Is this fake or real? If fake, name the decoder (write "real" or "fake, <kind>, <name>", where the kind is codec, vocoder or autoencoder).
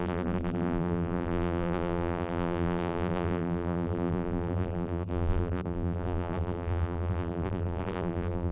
fake, vocoder, BigVGAN v2